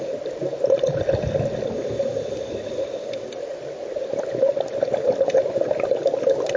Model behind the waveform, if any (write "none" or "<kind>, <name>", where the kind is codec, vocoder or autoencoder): none